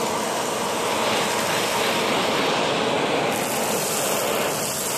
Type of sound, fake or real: real